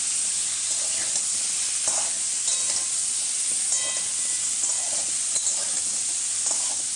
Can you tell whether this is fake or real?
real